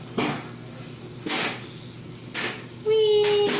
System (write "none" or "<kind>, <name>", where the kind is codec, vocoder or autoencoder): none